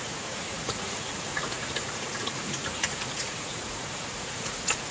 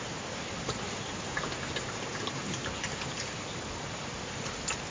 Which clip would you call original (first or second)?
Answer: second